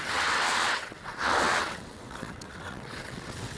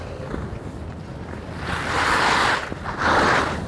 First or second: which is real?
second